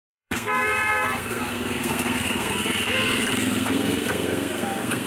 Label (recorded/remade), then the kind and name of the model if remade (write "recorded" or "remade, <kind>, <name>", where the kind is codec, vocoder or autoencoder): remade, codec, SNAC